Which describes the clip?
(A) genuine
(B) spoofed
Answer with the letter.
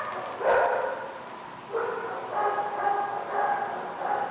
A